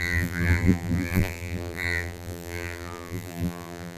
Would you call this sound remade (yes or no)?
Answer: yes